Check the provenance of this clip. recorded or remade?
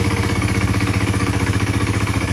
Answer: remade